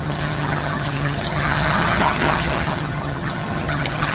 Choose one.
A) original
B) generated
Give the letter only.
B